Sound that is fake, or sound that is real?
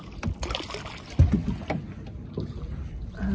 real